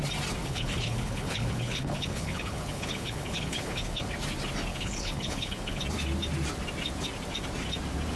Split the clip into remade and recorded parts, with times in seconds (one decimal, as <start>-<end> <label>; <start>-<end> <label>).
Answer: 0.0-0.4 recorded; 0.4-4.1 remade; 4.1-4.7 recorded; 4.7-5.8 remade; 5.8-8.2 recorded